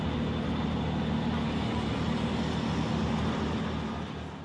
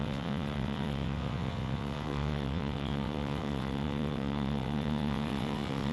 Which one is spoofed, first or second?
second